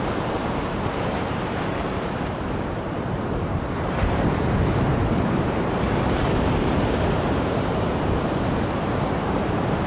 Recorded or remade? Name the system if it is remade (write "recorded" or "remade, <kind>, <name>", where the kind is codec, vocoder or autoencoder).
remade, vocoder, BigVGAN v2